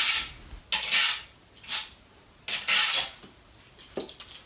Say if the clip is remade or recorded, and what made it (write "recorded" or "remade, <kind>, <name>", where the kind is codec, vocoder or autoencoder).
recorded